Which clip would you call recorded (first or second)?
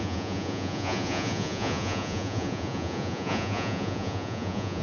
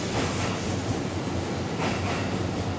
second